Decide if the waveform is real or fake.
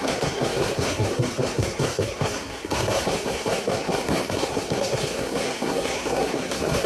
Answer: fake